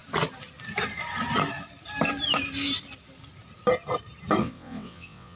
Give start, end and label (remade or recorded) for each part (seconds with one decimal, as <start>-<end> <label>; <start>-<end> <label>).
0.0-4.4 recorded; 4.4-5.4 remade